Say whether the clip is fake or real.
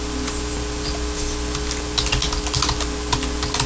real